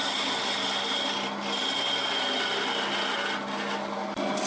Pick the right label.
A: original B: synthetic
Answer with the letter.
A